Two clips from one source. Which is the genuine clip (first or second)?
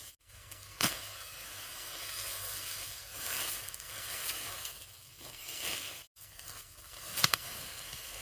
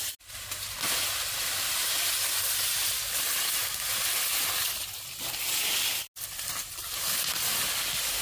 second